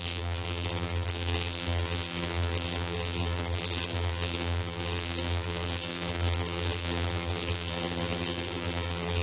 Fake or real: fake